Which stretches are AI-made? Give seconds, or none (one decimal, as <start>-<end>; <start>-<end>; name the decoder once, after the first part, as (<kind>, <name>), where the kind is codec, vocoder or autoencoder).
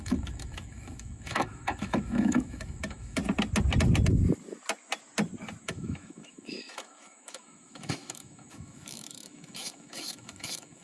0.0-3.2 (autoencoder, DAC-VAE); 5.6-10.8